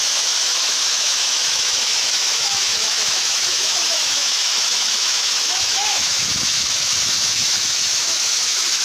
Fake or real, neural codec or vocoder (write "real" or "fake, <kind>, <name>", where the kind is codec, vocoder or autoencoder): fake, autoencoder, DAC-VAE